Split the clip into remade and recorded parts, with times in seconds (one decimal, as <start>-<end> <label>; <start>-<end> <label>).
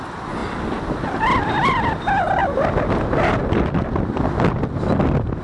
0.0-5.4 recorded